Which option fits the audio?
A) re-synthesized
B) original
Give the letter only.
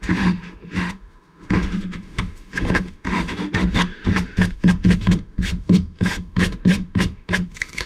A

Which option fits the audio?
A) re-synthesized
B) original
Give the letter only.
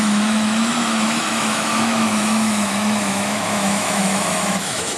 A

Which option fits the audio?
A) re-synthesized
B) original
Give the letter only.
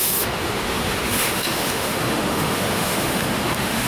A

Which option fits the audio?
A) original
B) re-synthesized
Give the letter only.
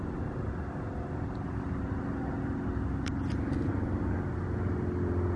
A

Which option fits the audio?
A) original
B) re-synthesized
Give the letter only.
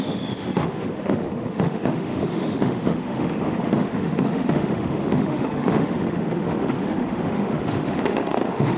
B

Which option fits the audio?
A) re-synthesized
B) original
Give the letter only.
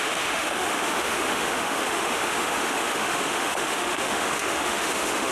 A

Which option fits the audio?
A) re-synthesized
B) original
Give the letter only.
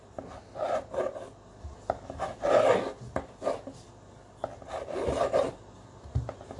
B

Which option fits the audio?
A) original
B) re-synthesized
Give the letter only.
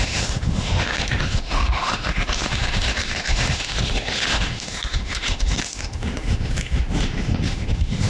B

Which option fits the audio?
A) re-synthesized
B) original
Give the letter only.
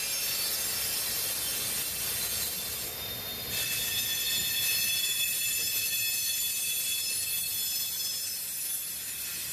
B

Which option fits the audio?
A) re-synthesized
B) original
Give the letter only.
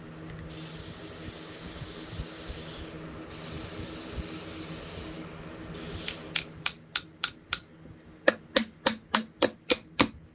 B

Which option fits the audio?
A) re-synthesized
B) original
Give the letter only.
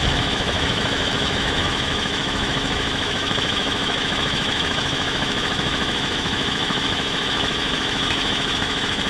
A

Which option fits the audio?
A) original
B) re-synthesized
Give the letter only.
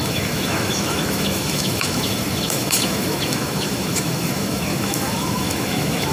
B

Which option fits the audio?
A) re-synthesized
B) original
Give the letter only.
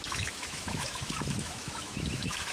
A